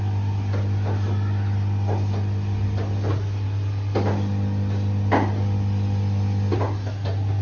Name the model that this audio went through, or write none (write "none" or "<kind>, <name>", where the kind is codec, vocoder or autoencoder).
none